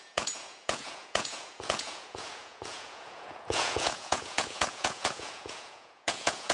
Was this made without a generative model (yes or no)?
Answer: no